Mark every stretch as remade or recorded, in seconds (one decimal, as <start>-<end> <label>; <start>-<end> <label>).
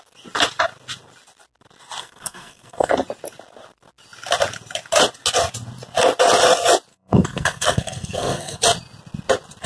0.0-2.0 recorded; 2.0-2.9 remade; 2.9-6.9 recorded; 6.9-8.6 remade; 8.6-9.7 recorded